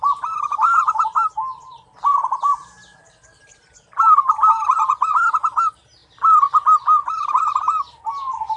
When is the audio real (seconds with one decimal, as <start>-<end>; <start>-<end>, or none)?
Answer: 0.0-8.6